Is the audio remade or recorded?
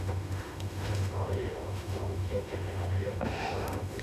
remade